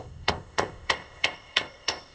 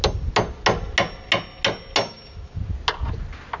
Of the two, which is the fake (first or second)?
first